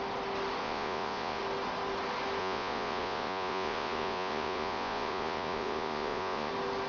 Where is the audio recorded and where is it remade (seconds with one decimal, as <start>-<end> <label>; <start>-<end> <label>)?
0.0-0.6 recorded; 0.6-1.4 remade; 1.4-2.4 recorded; 2.4-6.5 remade; 6.5-6.9 recorded